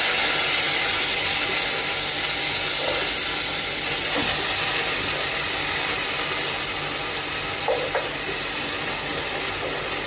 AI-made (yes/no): no